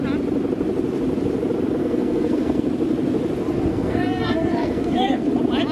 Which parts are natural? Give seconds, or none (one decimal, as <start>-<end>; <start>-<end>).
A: 0.0-1.8; 2.7-3.7; 5.3-5.7